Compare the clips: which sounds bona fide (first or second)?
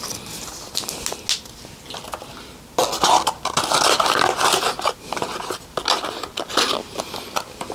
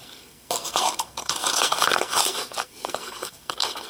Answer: first